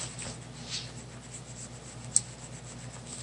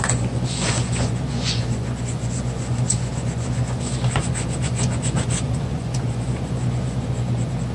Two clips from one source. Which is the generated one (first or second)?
second